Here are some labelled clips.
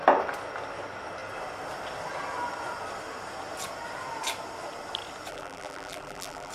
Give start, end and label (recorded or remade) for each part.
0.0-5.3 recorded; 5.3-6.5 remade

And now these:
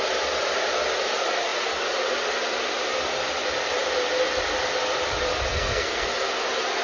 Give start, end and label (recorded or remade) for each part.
0.0-5.5 recorded; 5.5-6.1 remade; 6.1-6.8 recorded

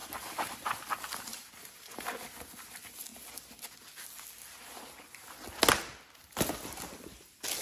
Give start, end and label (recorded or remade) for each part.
0.0-0.7 remade; 0.7-1.3 recorded; 1.3-2.1 remade; 2.1-7.6 recorded

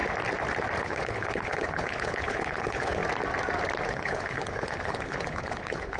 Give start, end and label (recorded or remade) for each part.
0.0-0.8 recorded; 0.8-3.0 remade; 3.0-3.9 recorded; 3.9-6.0 remade

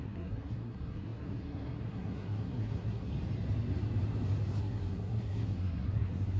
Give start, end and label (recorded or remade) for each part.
0.0-3.1 remade; 3.1-4.6 recorded; 4.6-6.4 remade